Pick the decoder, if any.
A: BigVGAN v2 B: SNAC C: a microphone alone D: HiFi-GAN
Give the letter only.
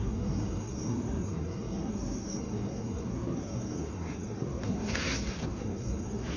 B